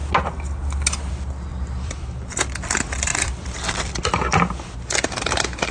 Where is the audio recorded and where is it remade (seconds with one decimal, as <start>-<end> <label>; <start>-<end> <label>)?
0.0-1.5 recorded; 1.5-2.2 remade; 2.2-3.1 recorded; 3.1-4.2 remade; 4.2-5.7 recorded